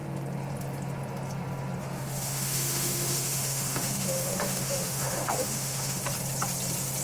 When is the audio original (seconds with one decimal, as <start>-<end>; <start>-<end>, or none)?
0.0-1.8; 6.0-7.0